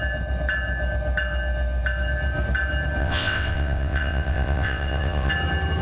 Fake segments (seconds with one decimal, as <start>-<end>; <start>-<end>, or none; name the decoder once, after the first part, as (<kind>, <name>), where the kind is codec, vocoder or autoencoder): 3.0-5.3 (vocoder, WaveNeXt)